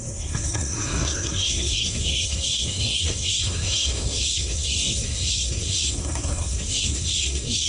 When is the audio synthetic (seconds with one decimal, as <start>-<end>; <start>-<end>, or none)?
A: 0.0-7.7